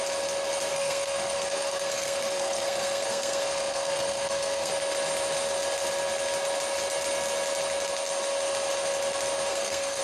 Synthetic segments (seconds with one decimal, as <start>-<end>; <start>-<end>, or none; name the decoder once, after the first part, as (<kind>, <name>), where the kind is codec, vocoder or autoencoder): 0.7-4.7 (codec, SNAC); 9.5-10.0